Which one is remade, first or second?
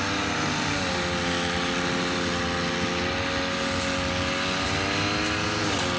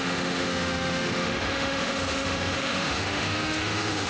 second